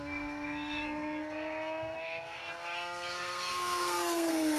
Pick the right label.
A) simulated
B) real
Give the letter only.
A